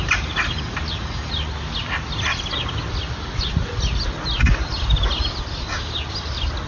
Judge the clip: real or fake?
real